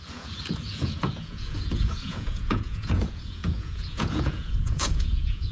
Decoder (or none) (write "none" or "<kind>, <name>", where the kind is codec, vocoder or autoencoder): vocoder, Vocos